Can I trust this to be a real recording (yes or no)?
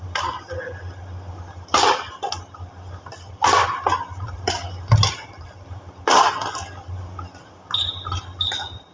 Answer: yes